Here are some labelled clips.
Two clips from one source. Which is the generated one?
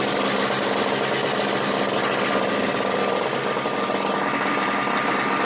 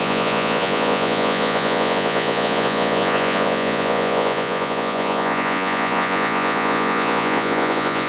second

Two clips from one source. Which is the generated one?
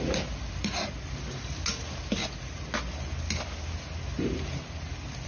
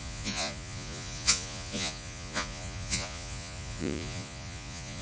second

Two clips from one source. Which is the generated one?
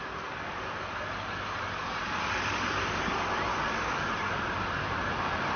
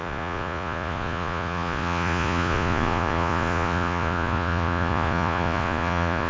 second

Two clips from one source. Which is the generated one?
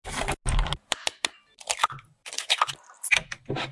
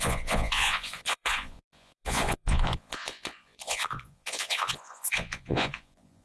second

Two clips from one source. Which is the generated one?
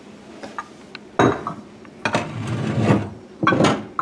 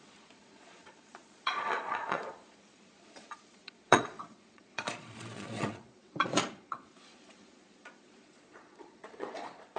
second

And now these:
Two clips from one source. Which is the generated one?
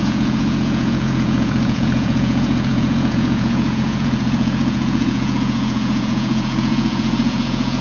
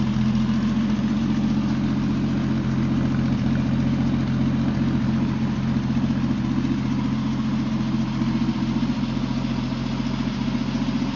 first